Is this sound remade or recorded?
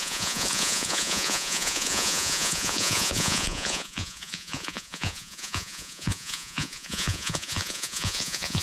remade